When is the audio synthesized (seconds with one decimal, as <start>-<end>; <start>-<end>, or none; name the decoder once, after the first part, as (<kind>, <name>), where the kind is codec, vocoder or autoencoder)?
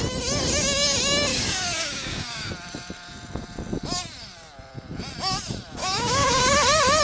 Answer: 1.3-2.5 (codec, DAC); 5.8-6.5